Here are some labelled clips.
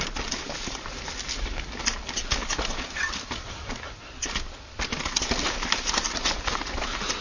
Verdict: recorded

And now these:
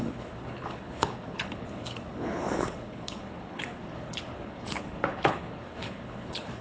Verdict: remade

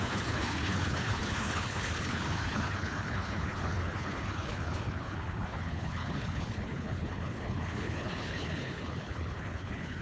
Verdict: remade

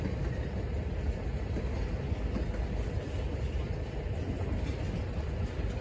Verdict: recorded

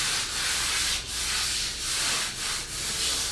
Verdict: recorded